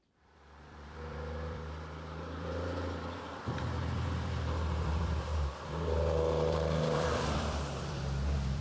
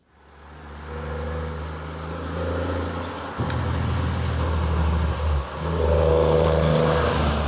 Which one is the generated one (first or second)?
first